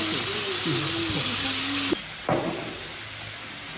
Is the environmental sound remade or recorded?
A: recorded